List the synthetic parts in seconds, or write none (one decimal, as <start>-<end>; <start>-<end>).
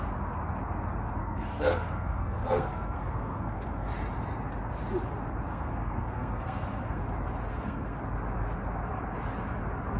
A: 1.2-3.9; 5.5-7.0; 7.5-8.0